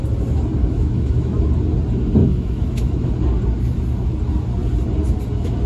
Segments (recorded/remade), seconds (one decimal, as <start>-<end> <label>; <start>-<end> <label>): 0.0-0.6 recorded; 0.6-1.4 remade; 1.4-2.2 recorded; 2.2-3.1 remade; 3.1-5.7 recorded